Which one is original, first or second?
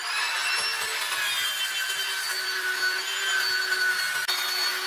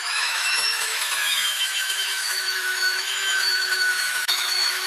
first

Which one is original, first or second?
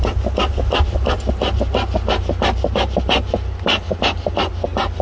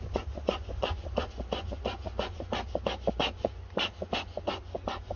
first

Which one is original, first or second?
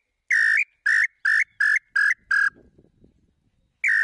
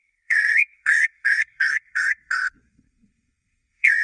first